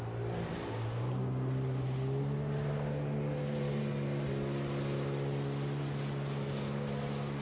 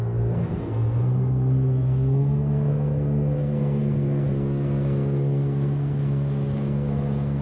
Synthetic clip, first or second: second